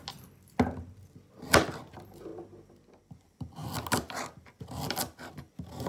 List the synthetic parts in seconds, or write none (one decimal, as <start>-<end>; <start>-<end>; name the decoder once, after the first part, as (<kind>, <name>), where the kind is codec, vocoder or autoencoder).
none